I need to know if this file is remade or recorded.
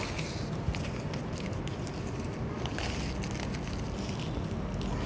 recorded